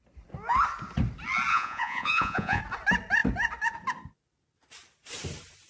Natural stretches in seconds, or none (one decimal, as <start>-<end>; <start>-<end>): 0.0-1.5; 2.6-5.7